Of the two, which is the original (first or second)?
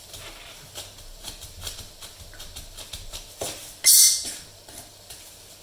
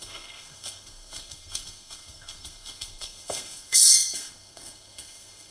first